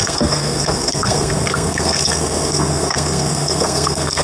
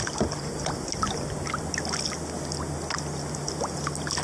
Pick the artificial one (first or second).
first